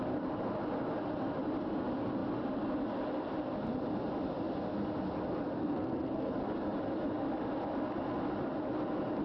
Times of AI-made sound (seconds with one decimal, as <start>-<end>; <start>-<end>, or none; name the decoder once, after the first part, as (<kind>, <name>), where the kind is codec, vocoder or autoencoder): 5.6-6.3 (codec, SNAC)